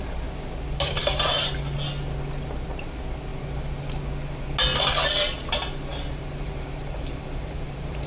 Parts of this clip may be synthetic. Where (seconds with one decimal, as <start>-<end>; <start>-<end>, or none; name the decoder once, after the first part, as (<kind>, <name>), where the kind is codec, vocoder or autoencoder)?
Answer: 1.0-1.5 (vocoder, BigVGAN v2); 5.9-8.1